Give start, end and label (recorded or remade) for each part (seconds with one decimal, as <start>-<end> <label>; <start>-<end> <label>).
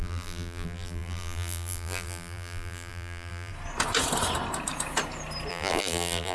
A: 0.0-3.5 remade; 3.5-5.5 recorded; 5.5-6.3 remade